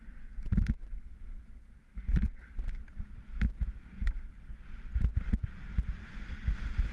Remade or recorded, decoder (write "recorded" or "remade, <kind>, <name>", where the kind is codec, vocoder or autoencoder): recorded